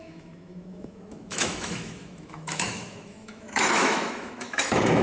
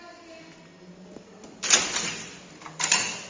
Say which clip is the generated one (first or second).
first